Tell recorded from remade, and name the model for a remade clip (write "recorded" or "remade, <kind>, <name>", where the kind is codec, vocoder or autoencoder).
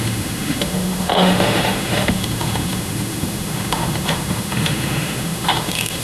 remade, autoencoder, DAC-VAE